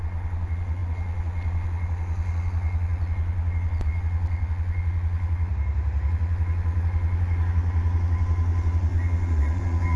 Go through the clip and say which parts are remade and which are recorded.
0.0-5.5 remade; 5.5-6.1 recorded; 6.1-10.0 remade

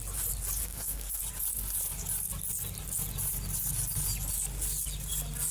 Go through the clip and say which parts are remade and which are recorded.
0.0-0.6 recorded; 0.6-1.2 remade; 1.2-5.5 recorded

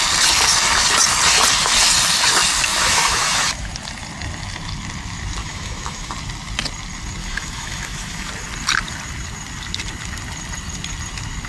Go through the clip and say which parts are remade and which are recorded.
0.0-2.7 recorded; 2.7-3.7 remade; 3.7-5.4 recorded; 5.4-6.1 remade; 6.1-7.2 recorded; 7.2-8.3 remade; 8.3-11.5 recorded

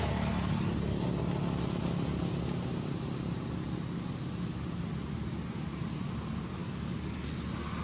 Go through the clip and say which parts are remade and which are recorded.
0.0-6.6 recorded; 6.6-7.2 remade; 7.2-7.8 recorded